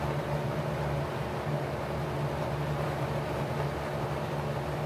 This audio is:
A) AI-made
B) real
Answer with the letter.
B